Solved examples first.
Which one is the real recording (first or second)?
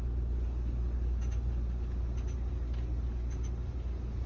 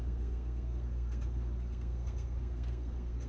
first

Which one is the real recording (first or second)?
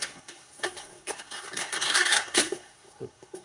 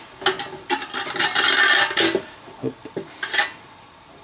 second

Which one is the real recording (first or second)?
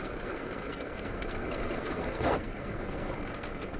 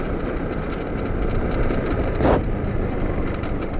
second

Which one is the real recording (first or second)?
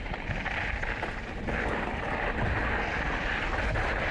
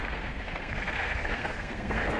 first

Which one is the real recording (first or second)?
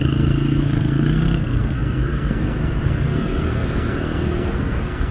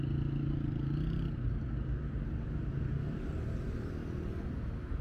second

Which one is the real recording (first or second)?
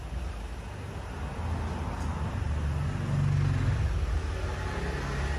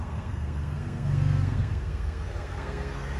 first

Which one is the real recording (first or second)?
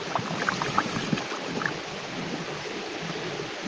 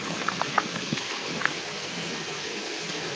first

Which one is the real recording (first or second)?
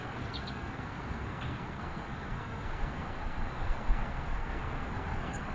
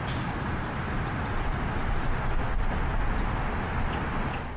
second